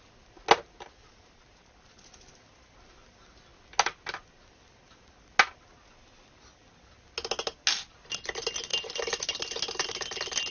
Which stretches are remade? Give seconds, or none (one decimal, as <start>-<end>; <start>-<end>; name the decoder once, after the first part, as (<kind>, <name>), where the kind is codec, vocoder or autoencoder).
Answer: none